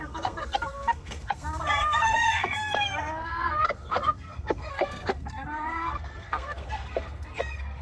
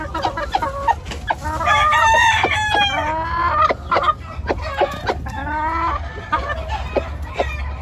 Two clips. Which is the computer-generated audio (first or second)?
first